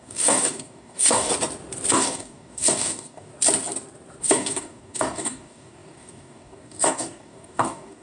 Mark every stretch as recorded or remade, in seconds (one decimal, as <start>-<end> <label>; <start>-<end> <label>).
0.0-1.3 remade; 1.3-1.9 recorded; 1.9-3.3 remade; 3.3-4.2 recorded; 4.2-8.0 remade